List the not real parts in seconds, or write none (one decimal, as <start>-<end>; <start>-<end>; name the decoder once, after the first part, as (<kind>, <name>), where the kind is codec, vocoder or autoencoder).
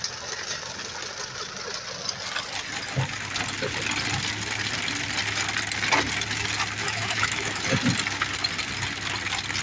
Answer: 6.8-7.6 (autoencoder, DAC-VAE)